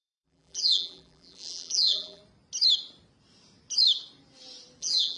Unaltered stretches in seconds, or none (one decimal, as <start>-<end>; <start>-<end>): 2.2-4.8